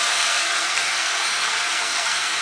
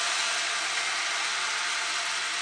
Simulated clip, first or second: first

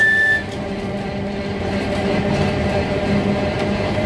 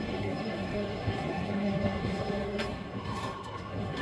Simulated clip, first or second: second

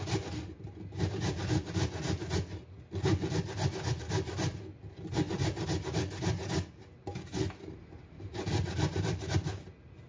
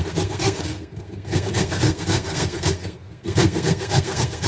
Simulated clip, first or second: second